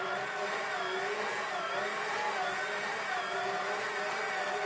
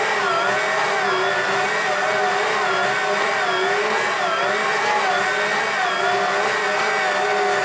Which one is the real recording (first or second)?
second